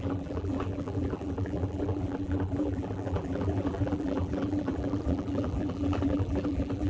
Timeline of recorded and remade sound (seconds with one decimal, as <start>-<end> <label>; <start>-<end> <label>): 0.0-6.9 remade